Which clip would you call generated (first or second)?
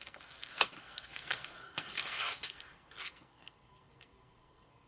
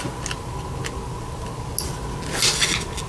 first